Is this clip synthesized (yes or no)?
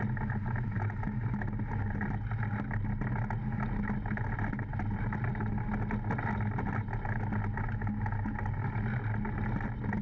no